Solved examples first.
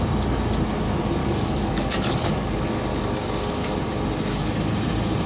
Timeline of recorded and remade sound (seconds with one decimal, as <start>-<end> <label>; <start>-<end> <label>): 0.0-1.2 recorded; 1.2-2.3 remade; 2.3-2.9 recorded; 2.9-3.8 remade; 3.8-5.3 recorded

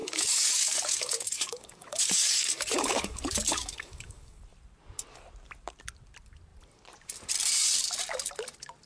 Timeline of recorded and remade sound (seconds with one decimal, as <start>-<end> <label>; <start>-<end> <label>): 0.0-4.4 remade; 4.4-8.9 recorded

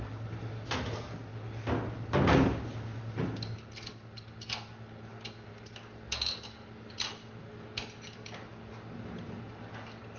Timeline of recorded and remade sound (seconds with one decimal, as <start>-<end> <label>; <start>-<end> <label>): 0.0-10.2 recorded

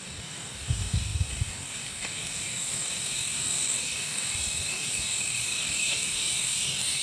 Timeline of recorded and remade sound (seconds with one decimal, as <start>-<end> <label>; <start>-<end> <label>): 0.0-7.0 remade

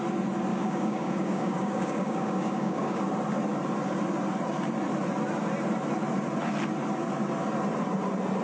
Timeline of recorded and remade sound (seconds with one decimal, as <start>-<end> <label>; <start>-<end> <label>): 0.0-0.5 recorded; 0.5-3.0 remade; 3.0-8.4 recorded

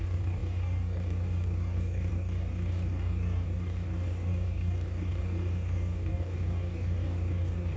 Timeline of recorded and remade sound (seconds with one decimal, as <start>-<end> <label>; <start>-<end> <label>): 0.0-7.8 remade

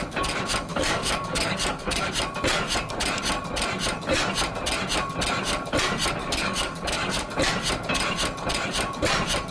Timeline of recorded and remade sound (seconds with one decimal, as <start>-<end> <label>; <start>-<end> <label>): 0.0-0.7 recorded; 0.7-2.1 remade; 2.1-6.2 recorded; 6.2-7.3 remade; 7.3-9.5 recorded

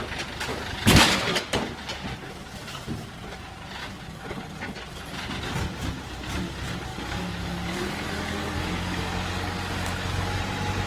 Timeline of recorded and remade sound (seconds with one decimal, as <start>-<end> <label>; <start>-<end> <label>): 0.0-0.5 recorded; 0.5-1.6 remade; 1.6-3.8 recorded; 3.8-4.6 remade; 4.6-6.9 recorded; 6.9-10.4 remade; 10.4-10.9 recorded